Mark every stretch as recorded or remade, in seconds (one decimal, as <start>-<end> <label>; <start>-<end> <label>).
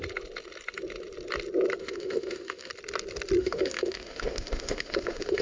0.0-1.8 recorded; 1.8-2.7 remade; 2.7-3.4 recorded; 3.4-5.4 remade